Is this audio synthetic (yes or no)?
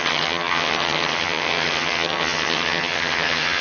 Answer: yes